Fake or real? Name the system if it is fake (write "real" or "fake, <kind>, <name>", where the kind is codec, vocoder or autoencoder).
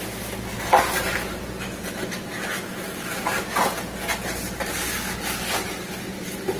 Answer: real